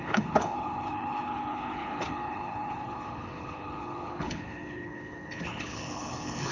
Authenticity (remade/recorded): remade